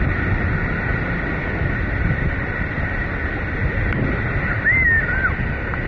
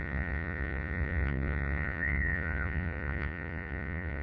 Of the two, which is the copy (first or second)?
second